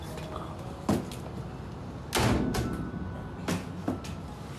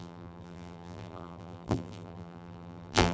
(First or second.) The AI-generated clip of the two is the second